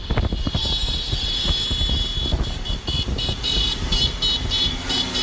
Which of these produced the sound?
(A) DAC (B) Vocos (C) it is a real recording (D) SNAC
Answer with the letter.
C